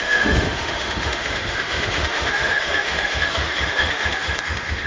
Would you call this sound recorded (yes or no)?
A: no